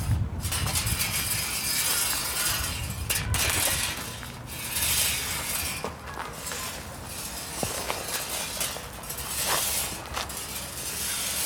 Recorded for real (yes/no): yes